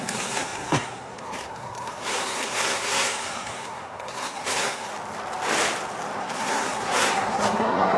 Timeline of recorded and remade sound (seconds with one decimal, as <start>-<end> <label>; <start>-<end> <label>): 0.0-4.9 remade; 4.9-6.2 recorded; 6.2-8.0 remade